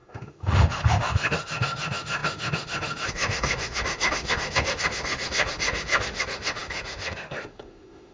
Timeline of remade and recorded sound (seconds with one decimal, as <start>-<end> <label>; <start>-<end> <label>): 0.0-8.1 remade